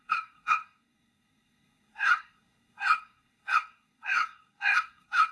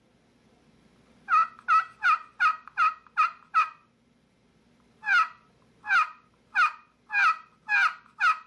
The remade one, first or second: first